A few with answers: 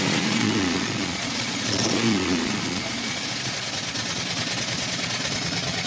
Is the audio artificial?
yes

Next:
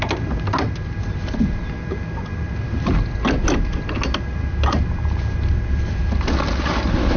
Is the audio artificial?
no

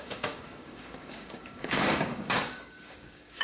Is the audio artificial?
yes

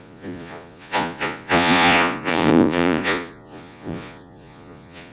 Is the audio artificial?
yes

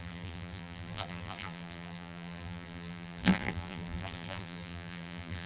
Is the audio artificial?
yes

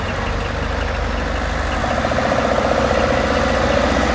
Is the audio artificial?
no